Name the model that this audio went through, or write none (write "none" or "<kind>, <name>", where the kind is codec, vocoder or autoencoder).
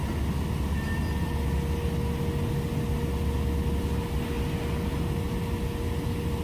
none